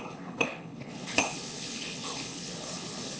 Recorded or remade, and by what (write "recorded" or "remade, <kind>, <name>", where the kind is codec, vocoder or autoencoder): remade, codec, HILCodec